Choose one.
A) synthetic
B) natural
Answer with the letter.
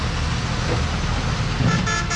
B